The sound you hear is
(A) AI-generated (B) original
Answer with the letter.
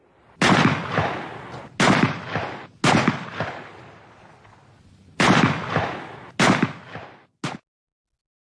B